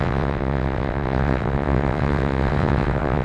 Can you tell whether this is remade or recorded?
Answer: remade